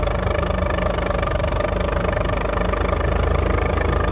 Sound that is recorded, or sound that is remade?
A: recorded